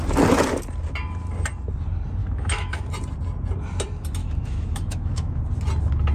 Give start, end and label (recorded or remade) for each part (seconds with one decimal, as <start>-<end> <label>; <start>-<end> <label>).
0.0-2.2 recorded; 2.2-2.9 remade; 2.9-4.2 recorded; 4.2-5.4 remade; 5.4-6.1 recorded